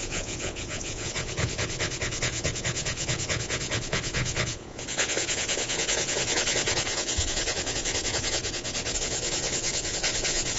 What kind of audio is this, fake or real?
fake